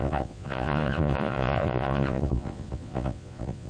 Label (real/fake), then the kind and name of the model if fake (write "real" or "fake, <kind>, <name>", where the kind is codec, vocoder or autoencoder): fake, vocoder, Vocos